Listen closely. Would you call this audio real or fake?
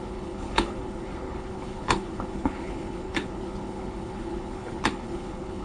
fake